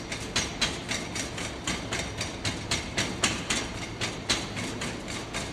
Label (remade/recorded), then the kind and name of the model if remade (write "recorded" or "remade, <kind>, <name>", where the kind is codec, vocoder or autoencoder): recorded